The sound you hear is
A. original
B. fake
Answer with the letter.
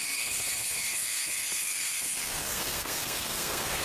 B